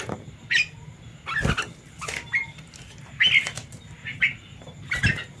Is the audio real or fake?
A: real